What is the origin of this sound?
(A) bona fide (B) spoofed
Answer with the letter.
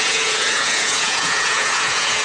B